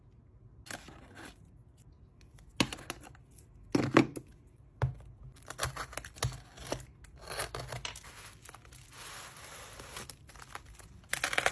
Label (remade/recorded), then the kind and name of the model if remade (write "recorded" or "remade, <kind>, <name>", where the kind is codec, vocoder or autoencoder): recorded